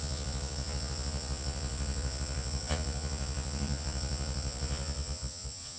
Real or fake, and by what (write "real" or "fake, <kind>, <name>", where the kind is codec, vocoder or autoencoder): fake, vocoder, Vocos